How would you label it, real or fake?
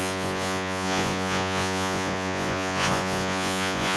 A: fake